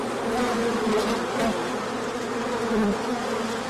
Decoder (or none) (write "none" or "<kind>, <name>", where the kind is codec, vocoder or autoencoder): none